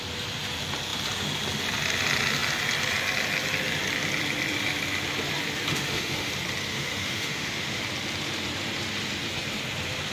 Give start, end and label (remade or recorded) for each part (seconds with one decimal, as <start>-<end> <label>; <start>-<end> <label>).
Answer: 0.0-5.7 recorded; 5.7-6.3 remade; 6.3-6.7 recorded; 6.7-7.8 remade; 7.8-10.1 recorded